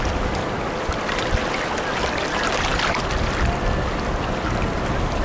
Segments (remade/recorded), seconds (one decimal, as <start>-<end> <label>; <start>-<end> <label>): 0.0-5.2 recorded